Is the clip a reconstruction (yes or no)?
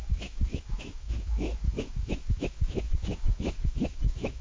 yes